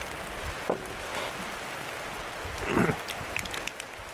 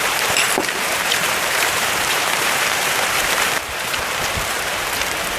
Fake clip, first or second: second